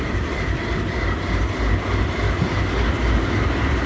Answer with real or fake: real